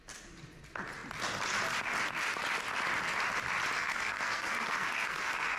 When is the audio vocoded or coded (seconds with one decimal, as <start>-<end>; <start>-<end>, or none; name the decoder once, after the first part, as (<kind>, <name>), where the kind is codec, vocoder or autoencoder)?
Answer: 3.8-5.6 (codec, SNAC)